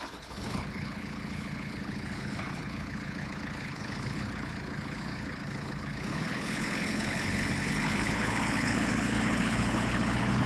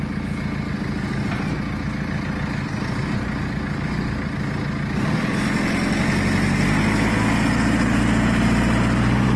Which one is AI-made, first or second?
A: first